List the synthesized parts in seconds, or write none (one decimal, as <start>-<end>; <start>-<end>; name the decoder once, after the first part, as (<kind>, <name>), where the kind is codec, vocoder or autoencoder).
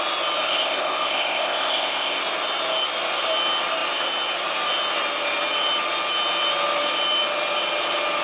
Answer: 0.4-2.2 (codec, ZipCodec)